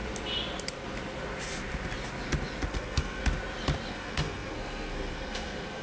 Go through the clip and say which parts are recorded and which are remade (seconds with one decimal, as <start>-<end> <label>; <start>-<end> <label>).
0.0-2.7 recorded; 2.7-3.2 remade; 3.2-3.9 recorded; 3.9-5.8 remade